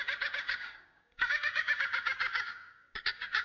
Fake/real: fake